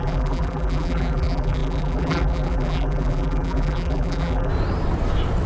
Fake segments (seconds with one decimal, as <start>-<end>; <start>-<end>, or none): 0.0-4.5